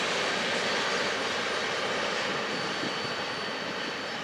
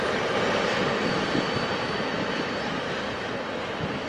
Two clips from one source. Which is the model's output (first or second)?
second